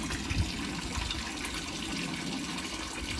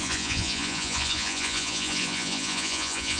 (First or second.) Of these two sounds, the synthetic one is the second